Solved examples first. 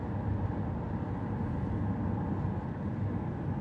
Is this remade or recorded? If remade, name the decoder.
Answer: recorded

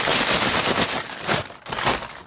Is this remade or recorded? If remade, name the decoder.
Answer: recorded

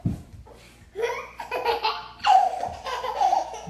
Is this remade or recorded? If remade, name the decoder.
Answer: recorded